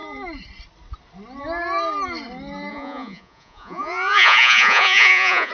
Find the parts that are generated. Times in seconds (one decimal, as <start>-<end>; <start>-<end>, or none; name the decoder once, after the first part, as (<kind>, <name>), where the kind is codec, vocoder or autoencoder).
2.7-5.5 (vocoder, Vocos)